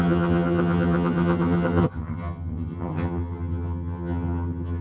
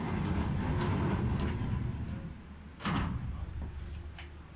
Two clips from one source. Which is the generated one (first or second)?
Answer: first